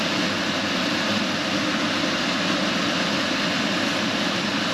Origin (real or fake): real